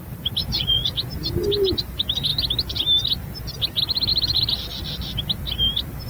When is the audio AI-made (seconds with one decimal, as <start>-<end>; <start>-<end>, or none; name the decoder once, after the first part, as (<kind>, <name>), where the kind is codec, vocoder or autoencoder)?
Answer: 0.4-1.1 (vocoder, Vocos)